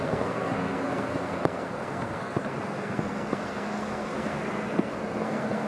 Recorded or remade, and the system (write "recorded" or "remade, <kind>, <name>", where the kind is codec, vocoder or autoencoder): remade, codec, SNAC